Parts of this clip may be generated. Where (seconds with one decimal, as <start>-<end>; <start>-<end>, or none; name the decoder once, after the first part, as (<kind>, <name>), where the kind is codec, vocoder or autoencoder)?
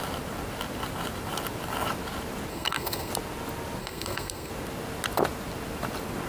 2.5-3.1 (codec, SNAC); 3.8-4.5